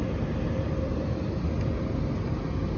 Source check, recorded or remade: recorded